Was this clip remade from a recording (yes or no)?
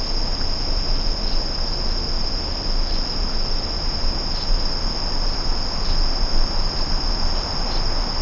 no